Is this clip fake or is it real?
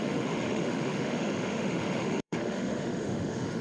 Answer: fake